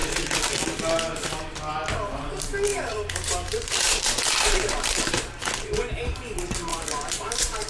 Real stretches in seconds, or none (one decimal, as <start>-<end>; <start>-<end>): 0.0-2.7; 5.1-6.7